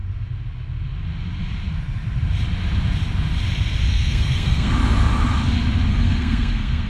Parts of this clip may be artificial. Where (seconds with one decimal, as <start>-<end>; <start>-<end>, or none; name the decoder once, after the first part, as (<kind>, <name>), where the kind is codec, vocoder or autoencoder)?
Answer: 3.9-4.7 (codec, SNAC); 5.9-6.9